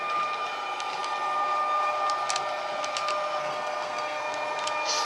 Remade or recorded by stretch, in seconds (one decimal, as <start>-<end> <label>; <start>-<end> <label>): 0.0-3.4 recorded; 3.4-4.2 remade; 4.2-5.0 recorded